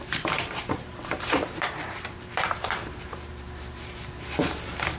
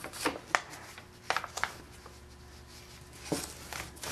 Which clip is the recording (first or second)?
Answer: second